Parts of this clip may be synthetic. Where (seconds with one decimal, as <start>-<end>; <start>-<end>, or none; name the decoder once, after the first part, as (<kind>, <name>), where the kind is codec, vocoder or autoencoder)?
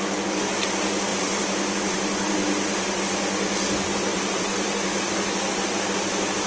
1.1-3.0 (vocoder, BigVGAN v2); 4.1-5.1